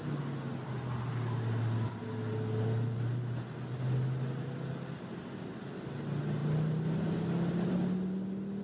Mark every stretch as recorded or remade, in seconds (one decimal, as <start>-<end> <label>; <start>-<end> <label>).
0.0-8.6 recorded